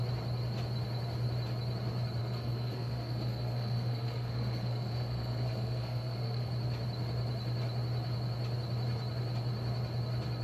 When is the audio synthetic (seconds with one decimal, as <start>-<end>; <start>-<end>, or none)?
2.2-6.5